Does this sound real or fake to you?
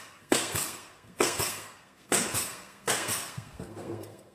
fake